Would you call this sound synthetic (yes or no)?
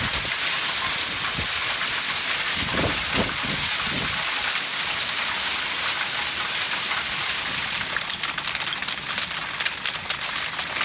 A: no